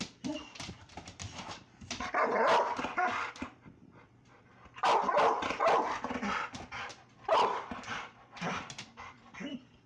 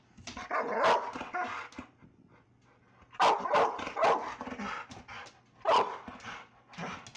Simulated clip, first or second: first